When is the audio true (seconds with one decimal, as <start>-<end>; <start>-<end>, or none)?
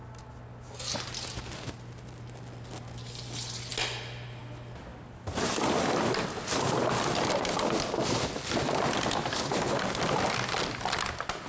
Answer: 0.0-11.5